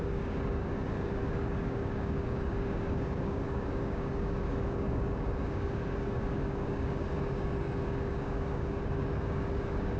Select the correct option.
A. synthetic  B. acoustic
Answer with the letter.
A